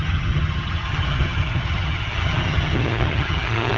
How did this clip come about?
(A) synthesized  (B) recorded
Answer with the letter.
A